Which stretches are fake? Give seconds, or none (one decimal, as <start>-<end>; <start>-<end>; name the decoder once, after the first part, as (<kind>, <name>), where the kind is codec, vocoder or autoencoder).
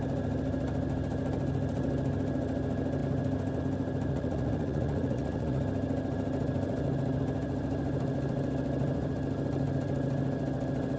4.1-5.6 (vocoder, Vocos)